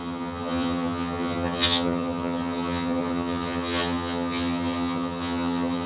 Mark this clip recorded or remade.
remade